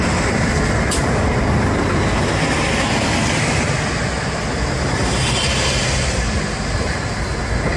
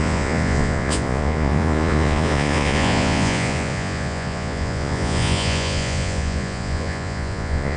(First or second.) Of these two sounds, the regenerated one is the second